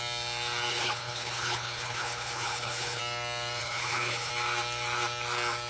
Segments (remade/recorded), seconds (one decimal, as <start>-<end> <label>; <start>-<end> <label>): 0.0-0.7 recorded; 0.7-3.0 remade; 3.0-3.6 recorded; 3.6-4.3 remade; 4.3-5.7 recorded